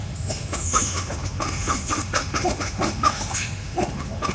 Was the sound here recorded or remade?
remade